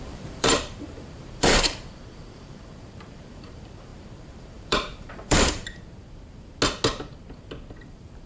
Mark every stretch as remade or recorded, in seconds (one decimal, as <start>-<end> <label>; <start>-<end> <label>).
0.0-6.5 remade; 6.5-7.8 recorded; 7.8-8.3 remade